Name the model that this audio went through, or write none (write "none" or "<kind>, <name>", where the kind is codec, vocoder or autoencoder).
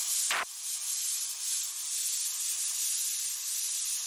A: none